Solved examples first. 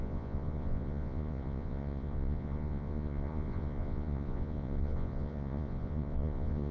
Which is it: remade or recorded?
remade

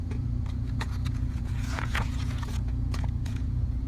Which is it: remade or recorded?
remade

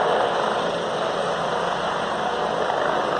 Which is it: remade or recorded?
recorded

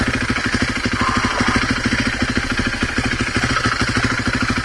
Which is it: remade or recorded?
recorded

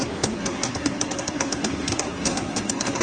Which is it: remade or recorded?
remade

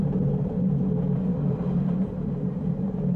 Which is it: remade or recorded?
remade